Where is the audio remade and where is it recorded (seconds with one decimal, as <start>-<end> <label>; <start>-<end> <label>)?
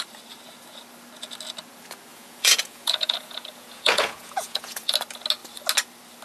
0.0-2.1 recorded; 2.1-4.9 remade; 4.9-6.2 recorded